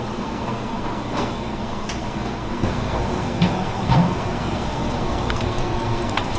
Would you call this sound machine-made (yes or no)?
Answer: yes